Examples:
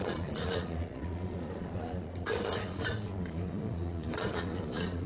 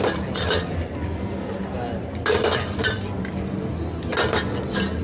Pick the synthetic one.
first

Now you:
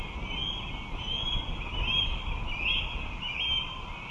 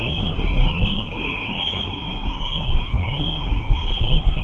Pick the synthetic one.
second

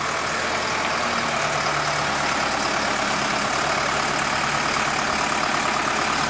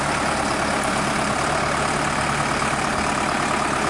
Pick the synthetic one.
second